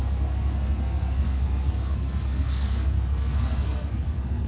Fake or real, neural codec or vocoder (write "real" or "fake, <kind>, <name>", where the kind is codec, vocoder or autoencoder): fake, codec, SNAC